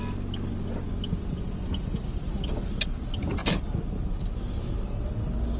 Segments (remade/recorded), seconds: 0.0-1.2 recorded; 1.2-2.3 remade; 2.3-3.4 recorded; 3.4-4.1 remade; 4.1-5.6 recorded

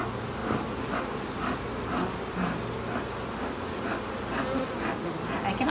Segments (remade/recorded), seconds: 0.0-5.7 recorded

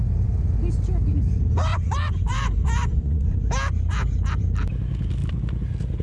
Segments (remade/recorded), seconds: 0.0-1.7 recorded; 1.7-3.4 remade; 3.4-6.0 recorded

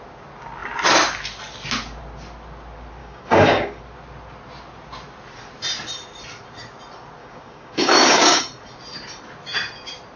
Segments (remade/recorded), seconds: 0.0-3.0 recorded; 3.0-3.8 remade; 3.8-7.2 recorded; 7.2-8.4 remade; 8.4-10.2 recorded

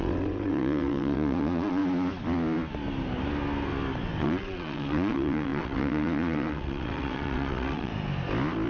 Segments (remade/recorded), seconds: 0.0-1.8 remade; 1.8-4.2 recorded; 4.2-7.9 remade; 7.9-8.7 recorded

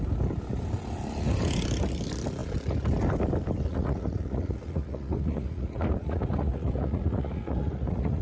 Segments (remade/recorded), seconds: 0.0-3.7 recorded; 3.7-8.2 remade

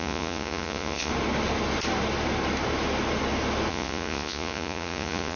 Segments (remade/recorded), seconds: 0.0-1.1 remade; 1.1-3.7 recorded; 3.7-5.4 remade

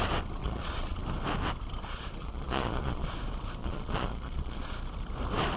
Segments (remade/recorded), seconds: 0.0-0.4 recorded; 0.4-1.0 remade; 1.0-2.2 recorded; 2.2-3.1 remade; 3.1-3.6 recorded; 3.6-4.7 remade; 4.7-5.6 recorded